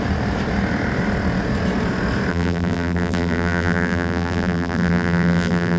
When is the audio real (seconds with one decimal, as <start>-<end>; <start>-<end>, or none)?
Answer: 0.0-2.3